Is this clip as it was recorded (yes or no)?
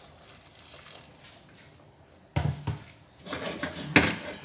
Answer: yes